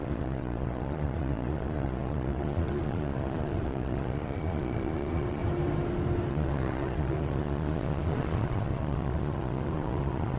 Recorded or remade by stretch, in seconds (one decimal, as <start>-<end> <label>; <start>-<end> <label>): 0.0-5.4 remade; 5.4-6.3 recorded; 6.3-10.4 remade

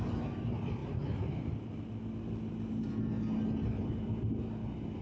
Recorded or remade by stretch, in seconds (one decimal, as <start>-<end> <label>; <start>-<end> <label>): 0.0-5.0 recorded

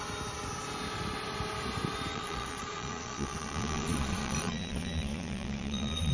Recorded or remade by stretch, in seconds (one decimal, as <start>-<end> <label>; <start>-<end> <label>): 0.0-2.1 recorded; 2.1-6.1 remade

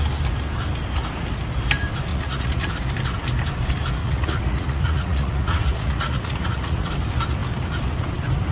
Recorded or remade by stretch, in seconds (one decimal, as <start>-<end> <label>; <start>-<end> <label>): 0.0-2.1 recorded; 2.1-2.7 remade; 2.7-4.0 recorded; 4.0-6.9 remade; 6.9-8.5 recorded

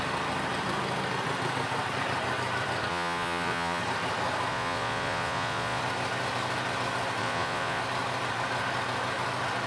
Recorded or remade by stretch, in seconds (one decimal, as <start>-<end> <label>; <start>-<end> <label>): 0.0-2.9 recorded; 2.9-3.8 remade; 3.8-4.5 recorded; 4.5-5.8 remade; 5.8-7.2 recorded; 7.2-7.8 remade; 7.8-9.7 recorded

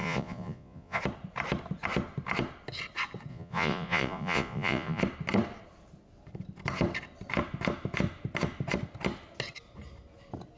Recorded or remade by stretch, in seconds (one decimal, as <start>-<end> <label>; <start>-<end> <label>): 0.0-1.0 remade; 1.0-3.3 recorded; 3.3-5.0 remade; 5.0-10.6 recorded

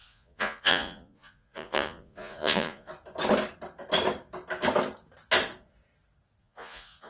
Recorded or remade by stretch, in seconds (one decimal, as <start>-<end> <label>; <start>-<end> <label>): 0.0-2.9 remade; 2.9-6.4 recorded; 6.4-7.1 remade

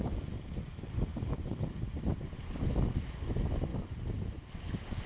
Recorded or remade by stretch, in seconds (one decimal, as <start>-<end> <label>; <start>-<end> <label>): 0.0-5.1 recorded